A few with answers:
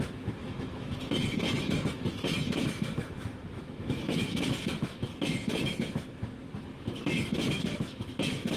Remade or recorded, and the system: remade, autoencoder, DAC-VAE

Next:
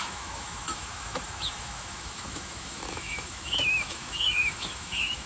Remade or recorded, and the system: remade, autoencoder, DAC-VAE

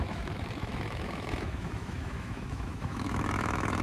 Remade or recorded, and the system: remade, autoencoder, DAC-VAE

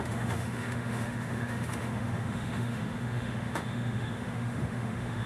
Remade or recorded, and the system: remade, autoencoder, DAC-VAE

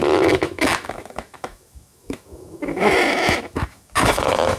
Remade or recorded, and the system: remade, autoencoder, DAC-VAE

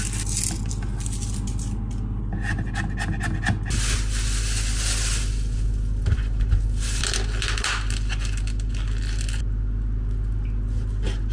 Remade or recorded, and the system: recorded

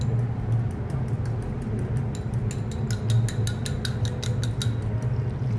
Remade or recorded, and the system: recorded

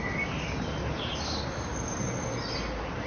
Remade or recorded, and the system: recorded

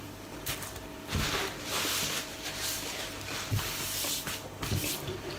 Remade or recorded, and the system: recorded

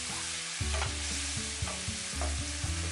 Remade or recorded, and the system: recorded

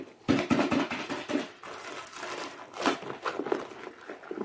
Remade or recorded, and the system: recorded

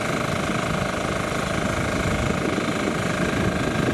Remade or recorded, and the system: recorded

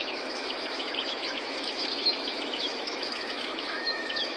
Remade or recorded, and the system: remade, autoencoder, DAC-VAE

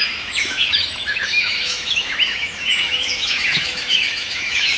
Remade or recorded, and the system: remade, autoencoder, DAC-VAE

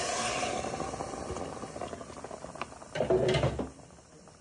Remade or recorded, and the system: recorded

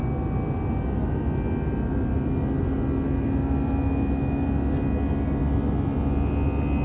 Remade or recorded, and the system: recorded